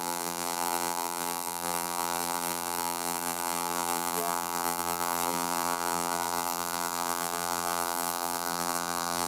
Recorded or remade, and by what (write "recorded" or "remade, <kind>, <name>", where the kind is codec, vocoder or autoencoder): remade, vocoder, BigVGAN v2